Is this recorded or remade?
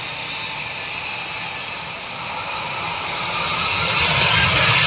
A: recorded